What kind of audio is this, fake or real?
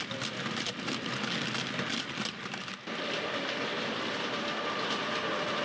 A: real